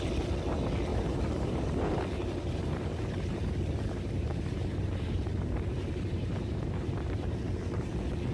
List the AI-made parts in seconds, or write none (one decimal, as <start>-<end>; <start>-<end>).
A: 0.9-1.6; 2.9-7.9